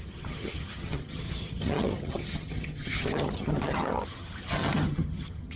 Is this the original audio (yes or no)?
no